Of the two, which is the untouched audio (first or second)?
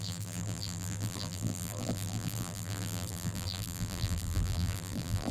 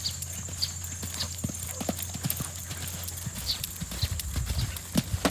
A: second